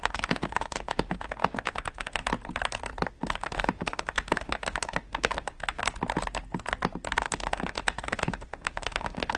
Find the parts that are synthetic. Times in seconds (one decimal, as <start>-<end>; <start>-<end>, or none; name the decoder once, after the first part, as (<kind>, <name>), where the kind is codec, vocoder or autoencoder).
0.0-2.2 (autoencoder, DAC-VAE); 3.1-5.8; 7.2-9.4